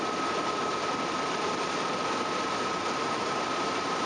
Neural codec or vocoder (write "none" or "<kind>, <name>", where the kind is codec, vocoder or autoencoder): vocoder, BigVGAN v2